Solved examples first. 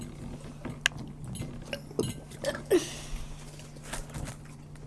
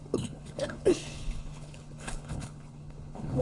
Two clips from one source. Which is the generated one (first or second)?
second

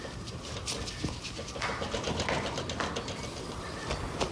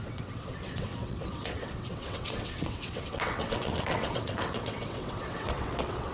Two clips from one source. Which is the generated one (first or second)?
second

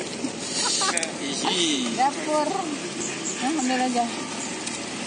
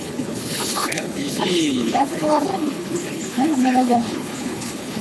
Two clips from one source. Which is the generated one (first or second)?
second